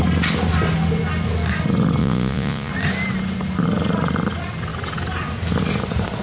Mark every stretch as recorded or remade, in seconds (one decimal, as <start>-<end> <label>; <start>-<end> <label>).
0.0-2.0 recorded; 2.0-2.7 remade; 2.7-6.2 recorded